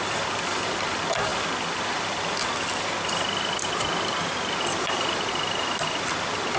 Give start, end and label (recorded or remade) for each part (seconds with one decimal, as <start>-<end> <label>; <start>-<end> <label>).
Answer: 0.0-6.6 recorded